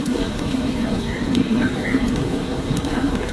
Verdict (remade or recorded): remade